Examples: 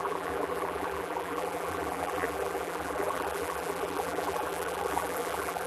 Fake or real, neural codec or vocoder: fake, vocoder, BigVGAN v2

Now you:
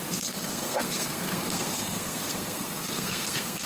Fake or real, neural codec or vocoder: fake, codec, SNAC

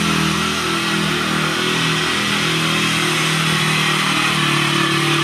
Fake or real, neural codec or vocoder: real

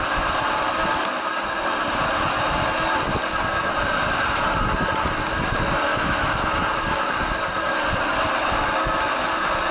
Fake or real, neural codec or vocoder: real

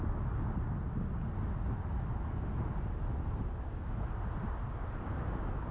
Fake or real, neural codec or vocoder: real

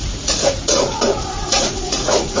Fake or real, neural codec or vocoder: fake, vocoder, Vocos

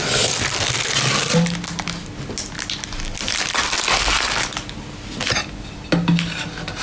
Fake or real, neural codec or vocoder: real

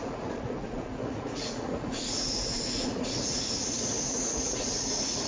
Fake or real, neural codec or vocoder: fake, vocoder, Vocos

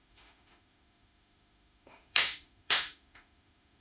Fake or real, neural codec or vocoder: fake, autoencoder, DAC-VAE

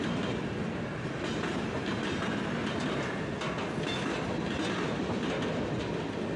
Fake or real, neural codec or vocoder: real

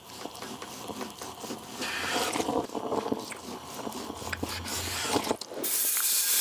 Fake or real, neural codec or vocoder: real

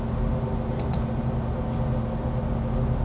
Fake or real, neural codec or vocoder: real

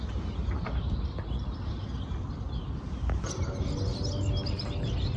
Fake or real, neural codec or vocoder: real